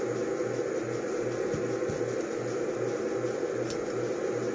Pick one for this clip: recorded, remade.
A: recorded